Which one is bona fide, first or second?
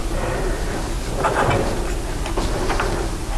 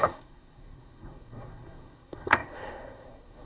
first